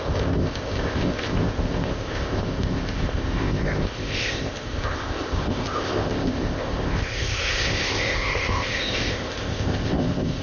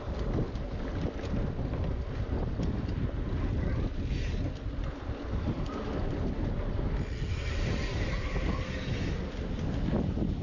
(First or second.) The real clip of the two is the second